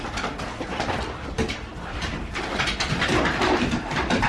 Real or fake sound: fake